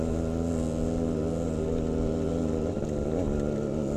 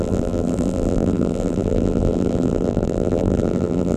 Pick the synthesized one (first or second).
second